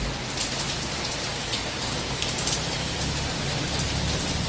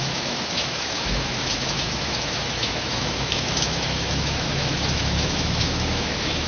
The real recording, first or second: first